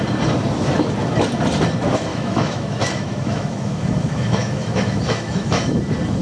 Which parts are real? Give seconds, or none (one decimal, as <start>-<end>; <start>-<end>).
0.0-2.1; 5.8-6.2